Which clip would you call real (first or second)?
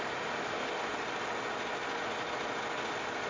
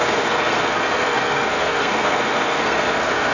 first